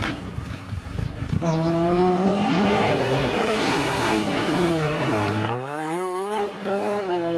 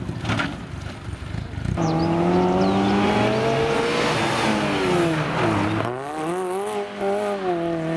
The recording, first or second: second